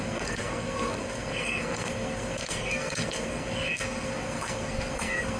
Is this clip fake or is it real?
fake